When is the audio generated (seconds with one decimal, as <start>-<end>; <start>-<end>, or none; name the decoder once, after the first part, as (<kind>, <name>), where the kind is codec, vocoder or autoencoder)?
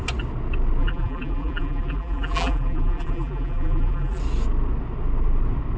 0.8-4.2 (vocoder, BigVGAN v2)